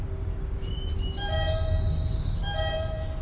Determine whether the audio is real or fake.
real